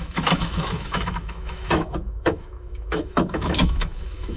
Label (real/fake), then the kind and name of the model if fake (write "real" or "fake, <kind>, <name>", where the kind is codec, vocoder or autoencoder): fake, autoencoder, DAC-VAE